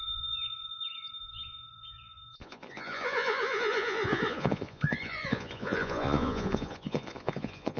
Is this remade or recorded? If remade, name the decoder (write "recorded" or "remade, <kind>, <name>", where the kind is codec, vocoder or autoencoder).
remade, vocoder, Vocos